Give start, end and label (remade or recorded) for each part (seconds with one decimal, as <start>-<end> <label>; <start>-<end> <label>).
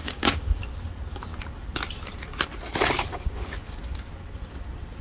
0.0-0.6 remade; 0.6-3.1 recorded; 3.1-3.7 remade; 3.7-5.0 recorded